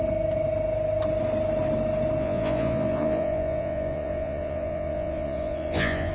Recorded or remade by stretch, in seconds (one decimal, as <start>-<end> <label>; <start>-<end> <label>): 0.0-2.2 recorded; 2.2-6.1 remade